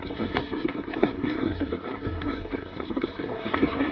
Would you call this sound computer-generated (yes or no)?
yes